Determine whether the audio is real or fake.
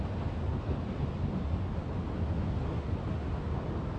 real